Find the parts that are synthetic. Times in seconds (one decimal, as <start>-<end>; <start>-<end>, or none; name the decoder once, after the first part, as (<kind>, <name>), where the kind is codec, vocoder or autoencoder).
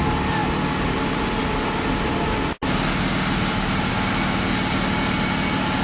none